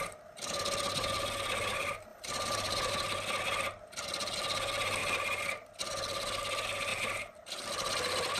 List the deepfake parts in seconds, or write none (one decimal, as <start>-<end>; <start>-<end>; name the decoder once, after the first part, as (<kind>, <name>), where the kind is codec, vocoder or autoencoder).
2.1-2.9 (vocoder, BigVGAN v2); 5.0-5.7; 6.9-7.7